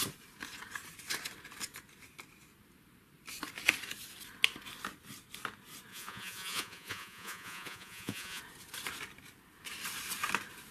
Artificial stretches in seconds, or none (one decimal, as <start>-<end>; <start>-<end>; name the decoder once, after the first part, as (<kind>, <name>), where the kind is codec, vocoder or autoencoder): 5.9-8.4 (vocoder, Vocos)